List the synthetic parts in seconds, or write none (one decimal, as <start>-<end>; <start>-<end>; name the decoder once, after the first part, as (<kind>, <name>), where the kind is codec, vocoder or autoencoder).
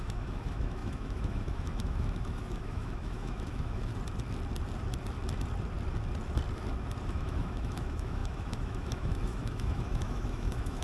0.0-3.9 (autoencoder, DAC-VAE); 7.1-10.8